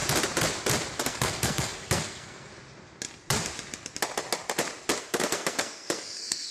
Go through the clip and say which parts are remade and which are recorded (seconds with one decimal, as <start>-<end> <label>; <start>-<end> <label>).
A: 0.0-1.0 recorded; 1.0-2.5 remade; 2.5-5.0 recorded; 5.0-6.5 remade